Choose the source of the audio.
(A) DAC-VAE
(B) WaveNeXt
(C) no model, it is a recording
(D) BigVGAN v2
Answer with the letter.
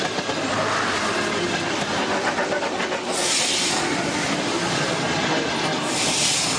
D